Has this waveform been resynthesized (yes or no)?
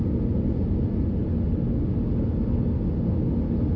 no